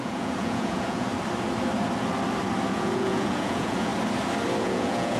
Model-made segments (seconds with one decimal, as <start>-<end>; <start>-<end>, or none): 0.0-1.1; 2.7-3.9; 4.6-5.2